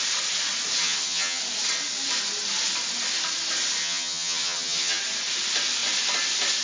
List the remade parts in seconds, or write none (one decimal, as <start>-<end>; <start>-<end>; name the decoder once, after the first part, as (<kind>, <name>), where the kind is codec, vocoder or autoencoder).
0.8-1.4 (vocoder, HiFi-GAN); 3.8-5.0